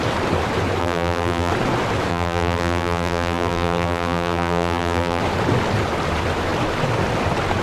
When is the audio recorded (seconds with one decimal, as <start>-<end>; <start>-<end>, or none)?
0.0-0.8; 1.5-2.1; 5.2-7.6